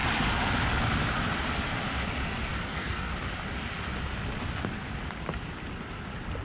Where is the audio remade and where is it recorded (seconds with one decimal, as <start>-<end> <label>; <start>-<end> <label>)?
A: 0.0-2.5 recorded; 2.5-3.1 remade; 3.1-6.4 recorded